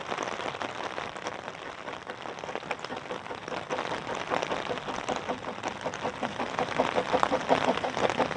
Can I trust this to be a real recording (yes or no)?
no